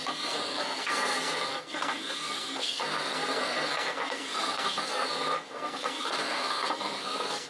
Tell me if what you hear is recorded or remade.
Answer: remade